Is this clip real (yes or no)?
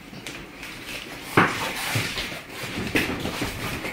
no